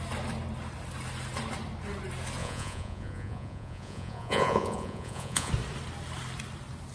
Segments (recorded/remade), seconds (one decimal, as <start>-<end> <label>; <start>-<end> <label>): 0.0-2.4 recorded; 2.4-5.5 remade; 5.5-6.9 recorded